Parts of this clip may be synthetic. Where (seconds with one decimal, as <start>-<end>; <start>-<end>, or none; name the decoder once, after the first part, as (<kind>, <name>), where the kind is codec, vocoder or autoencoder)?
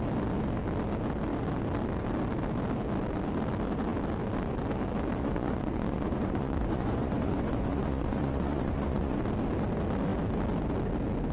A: 5.2-9.2 (vocoder, Vocos)